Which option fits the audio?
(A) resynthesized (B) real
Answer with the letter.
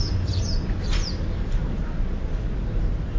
B